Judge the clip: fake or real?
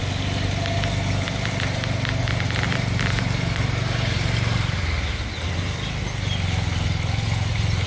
real